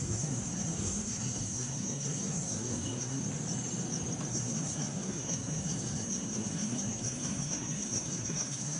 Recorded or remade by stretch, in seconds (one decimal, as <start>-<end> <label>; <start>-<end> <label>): 0.0-3.2 remade; 3.2-4.3 recorded; 4.3-8.8 remade